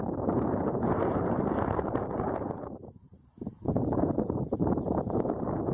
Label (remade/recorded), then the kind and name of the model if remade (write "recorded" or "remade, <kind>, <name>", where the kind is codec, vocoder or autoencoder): remade, vocoder, BigVGAN v2